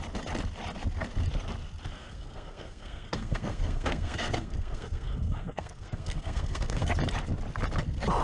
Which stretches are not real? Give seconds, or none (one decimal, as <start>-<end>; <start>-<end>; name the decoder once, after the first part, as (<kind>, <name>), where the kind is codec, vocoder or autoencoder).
2.0-6.9 (codec, SNAC)